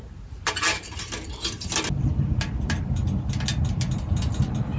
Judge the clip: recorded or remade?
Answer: recorded